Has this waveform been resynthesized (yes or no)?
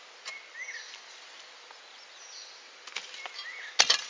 no